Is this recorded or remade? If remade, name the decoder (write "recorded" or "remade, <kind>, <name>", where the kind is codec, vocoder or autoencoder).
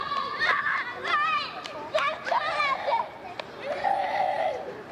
recorded